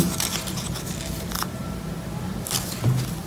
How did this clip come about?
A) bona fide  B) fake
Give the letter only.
A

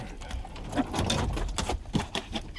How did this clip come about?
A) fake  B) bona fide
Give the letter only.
B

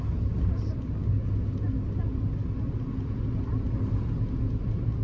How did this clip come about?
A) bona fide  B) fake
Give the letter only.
A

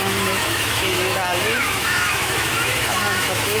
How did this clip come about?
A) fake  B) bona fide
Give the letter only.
A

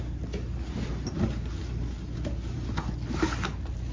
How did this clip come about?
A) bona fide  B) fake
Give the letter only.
A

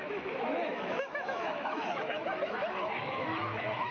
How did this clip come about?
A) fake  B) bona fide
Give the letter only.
A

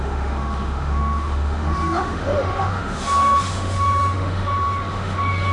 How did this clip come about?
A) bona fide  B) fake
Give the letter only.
B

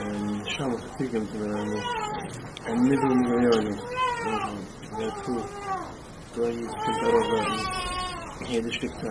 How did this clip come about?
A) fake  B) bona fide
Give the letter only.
B